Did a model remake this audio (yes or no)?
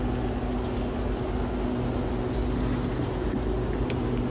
no